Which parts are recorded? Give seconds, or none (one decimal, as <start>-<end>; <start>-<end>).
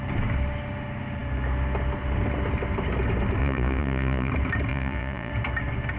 0.0-3.4; 4.3-4.7; 5.3-6.0